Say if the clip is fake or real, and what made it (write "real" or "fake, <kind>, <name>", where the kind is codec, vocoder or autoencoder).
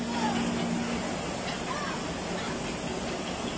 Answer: real